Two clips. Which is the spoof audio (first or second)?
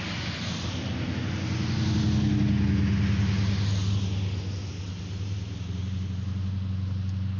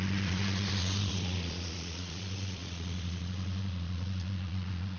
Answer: second